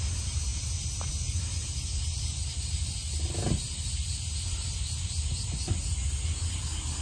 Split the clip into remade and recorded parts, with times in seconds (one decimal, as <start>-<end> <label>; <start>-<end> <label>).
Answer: 0.0-7.0 recorded